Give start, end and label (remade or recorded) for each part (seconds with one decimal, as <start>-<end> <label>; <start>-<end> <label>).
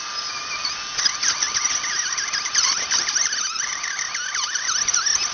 0.0-5.3 recorded